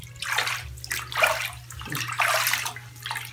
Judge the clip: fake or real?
real